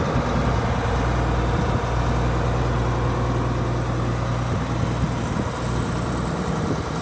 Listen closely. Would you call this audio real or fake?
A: real